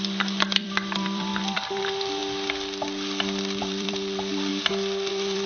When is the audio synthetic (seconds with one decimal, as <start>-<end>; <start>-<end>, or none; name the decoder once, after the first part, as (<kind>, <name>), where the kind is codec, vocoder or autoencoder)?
0.0-2.2 (vocoder, BigVGAN v2); 3.6-4.5; 5.1-5.5